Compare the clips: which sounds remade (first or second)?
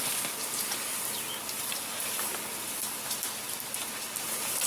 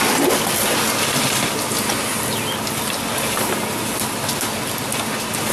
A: first